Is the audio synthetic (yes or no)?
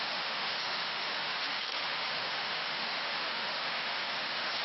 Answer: yes